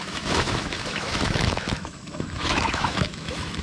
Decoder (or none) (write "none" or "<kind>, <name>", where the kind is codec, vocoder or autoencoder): autoencoder, DAC-VAE